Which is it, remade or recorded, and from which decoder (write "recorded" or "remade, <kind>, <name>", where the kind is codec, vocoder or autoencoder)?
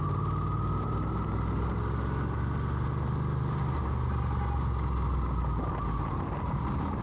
recorded